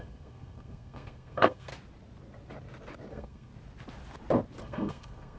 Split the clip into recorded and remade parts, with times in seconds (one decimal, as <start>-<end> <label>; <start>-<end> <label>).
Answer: 0.0-1.7 remade; 1.7-3.1 recorded; 3.1-3.5 remade; 3.5-4.6 recorded; 4.6-5.4 remade